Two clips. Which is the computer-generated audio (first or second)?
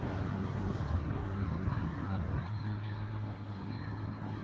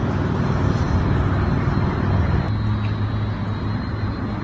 first